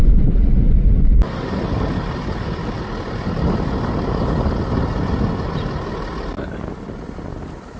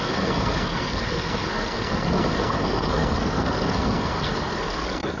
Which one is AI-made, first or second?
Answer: second